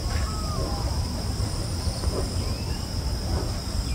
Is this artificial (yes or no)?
no